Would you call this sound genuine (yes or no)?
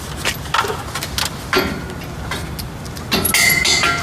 yes